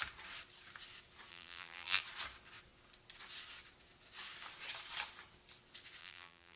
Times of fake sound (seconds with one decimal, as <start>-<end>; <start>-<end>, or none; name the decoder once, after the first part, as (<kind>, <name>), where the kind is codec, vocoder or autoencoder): 1.3-2.0 (vocoder, BigVGAN v2); 6.0-6.6